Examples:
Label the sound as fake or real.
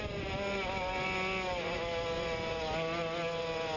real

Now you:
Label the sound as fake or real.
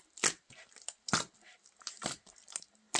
real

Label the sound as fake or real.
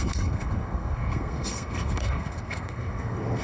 fake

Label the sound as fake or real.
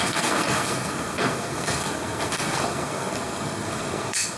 fake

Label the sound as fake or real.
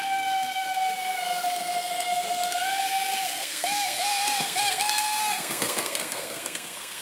fake